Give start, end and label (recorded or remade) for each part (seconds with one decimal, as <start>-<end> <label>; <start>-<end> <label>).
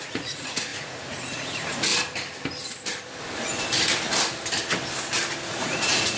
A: 0.0-1.9 remade; 1.9-5.5 recorded; 5.5-6.2 remade